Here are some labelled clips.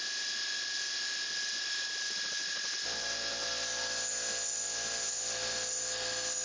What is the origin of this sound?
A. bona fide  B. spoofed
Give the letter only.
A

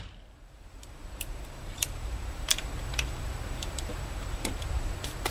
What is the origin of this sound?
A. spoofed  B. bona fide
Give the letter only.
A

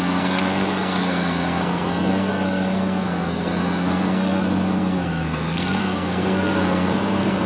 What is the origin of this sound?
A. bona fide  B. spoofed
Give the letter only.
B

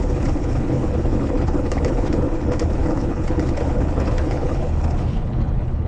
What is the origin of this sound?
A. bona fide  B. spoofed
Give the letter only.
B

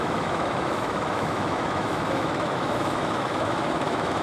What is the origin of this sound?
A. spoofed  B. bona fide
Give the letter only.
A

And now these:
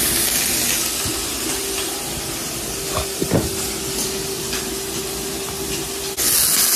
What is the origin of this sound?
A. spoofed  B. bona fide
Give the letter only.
B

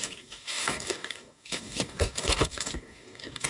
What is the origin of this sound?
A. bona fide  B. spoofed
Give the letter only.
B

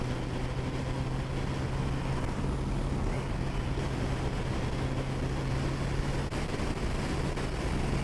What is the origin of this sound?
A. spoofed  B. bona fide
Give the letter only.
B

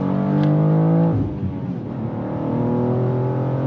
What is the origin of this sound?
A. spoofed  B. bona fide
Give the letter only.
B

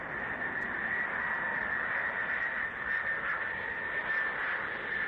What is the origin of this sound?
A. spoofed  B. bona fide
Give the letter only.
A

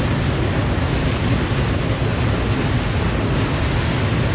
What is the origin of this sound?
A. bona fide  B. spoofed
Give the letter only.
A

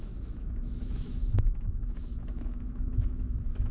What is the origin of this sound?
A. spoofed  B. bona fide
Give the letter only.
A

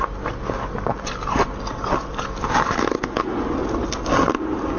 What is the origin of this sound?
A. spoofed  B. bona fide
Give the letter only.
B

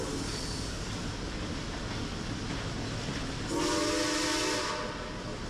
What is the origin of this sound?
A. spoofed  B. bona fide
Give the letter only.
B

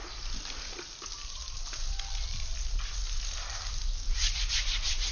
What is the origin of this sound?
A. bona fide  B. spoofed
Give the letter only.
A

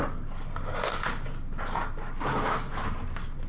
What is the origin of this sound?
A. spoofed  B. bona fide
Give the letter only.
B